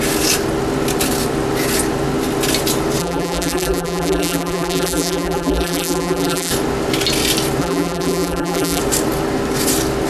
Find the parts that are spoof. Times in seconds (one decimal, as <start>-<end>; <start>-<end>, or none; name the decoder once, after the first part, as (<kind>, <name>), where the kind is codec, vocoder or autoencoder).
3.0-6.5 (vocoder, BigVGAN v2); 7.6-8.8